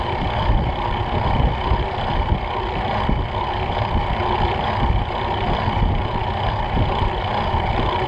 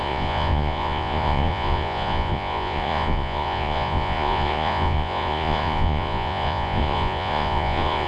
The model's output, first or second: second